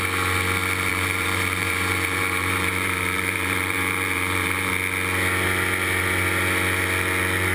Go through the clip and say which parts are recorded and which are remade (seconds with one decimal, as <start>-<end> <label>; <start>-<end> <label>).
0.0-0.9 recorded; 0.9-4.7 remade; 4.7-7.5 recorded